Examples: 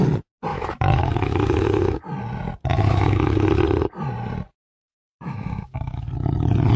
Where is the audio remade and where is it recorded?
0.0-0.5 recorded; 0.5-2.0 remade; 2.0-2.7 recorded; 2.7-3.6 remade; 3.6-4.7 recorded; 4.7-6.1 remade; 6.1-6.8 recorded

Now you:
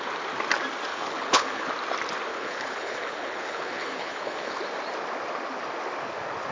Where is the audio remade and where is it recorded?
0.0-0.9 recorded; 0.9-1.7 remade; 1.7-2.3 recorded; 2.3-4.6 remade; 4.6-6.5 recorded

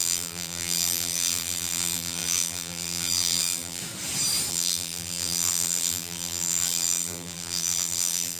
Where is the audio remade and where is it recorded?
0.0-3.8 remade; 3.8-4.5 recorded; 4.5-8.4 remade

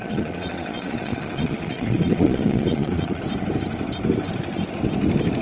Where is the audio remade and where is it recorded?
0.0-3.2 remade; 3.2-5.4 recorded